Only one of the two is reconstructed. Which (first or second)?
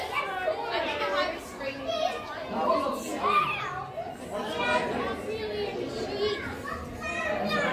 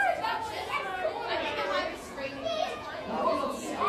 second